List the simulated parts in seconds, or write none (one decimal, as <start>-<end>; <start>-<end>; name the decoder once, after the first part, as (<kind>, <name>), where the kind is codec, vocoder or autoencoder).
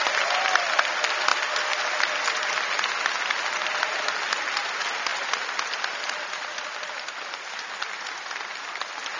none